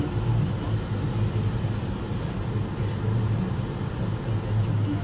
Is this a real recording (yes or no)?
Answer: yes